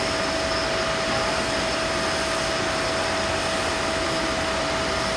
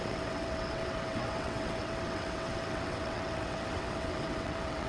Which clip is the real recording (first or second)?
first